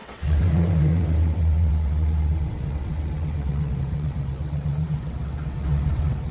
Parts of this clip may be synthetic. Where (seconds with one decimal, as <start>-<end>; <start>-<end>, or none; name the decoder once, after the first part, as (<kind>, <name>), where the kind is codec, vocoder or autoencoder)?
0.0-6.3 (vocoder, WaveNeXt)